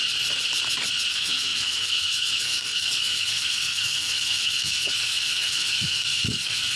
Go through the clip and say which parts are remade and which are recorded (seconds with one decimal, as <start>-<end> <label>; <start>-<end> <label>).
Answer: 0.0-1.1 recorded; 1.1-6.8 remade